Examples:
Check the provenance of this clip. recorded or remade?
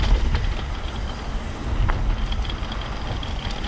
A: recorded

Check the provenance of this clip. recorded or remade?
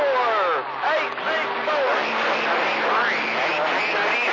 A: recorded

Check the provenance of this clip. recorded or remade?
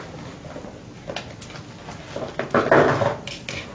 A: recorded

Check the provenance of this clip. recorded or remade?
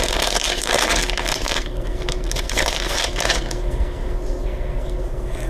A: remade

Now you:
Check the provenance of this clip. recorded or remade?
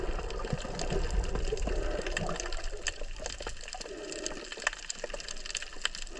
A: recorded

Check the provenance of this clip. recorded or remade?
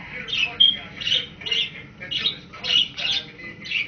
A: recorded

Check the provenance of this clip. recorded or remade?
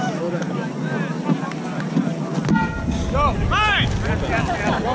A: recorded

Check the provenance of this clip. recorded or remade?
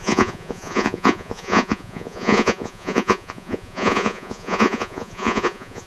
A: remade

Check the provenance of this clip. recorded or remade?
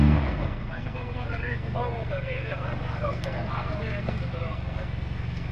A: remade